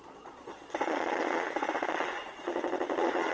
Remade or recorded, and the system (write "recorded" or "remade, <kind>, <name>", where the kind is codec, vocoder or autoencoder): remade, vocoder, Vocos